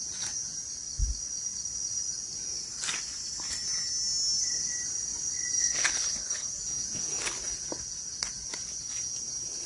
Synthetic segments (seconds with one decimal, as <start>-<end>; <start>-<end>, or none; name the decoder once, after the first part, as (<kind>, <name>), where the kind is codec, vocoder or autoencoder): 5.6-6.5 (codec, HILCodec)